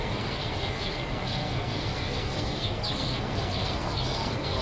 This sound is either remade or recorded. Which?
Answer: remade